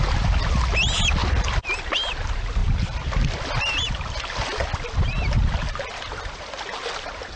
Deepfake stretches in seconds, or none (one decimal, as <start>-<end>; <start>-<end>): none